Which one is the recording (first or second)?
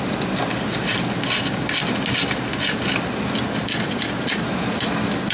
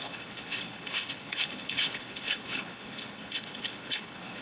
first